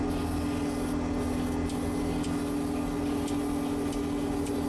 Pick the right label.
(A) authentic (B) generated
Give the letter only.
A